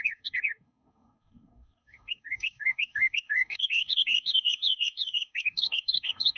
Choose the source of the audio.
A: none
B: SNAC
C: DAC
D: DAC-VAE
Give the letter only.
C